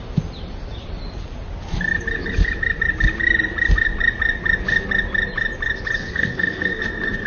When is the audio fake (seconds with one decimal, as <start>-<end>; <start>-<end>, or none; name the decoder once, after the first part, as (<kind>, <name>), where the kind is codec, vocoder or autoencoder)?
6.0-6.8 (codec, SNAC)